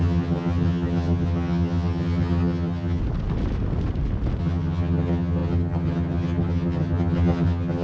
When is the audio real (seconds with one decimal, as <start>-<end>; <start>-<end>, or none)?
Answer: 3.0-4.4